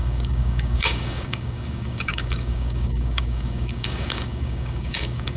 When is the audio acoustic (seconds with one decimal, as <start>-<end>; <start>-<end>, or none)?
none